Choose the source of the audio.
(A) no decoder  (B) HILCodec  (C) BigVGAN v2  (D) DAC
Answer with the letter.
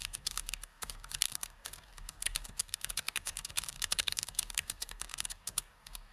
D